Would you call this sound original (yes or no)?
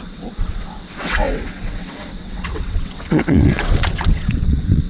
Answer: no